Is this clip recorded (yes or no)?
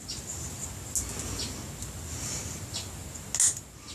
yes